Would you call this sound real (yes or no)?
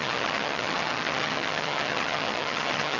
no